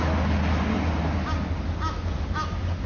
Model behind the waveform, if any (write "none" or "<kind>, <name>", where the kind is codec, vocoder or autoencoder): none